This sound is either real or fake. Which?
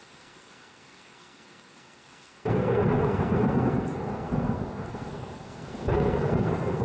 fake